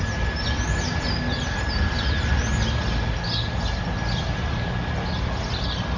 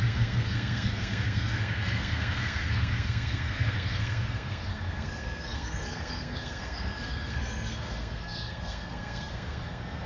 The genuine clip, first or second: first